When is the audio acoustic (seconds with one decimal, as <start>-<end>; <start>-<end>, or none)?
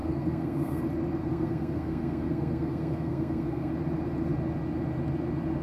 0.8-1.3; 3.7-5.6